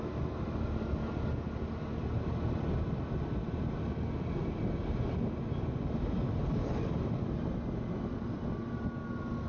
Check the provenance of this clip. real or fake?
real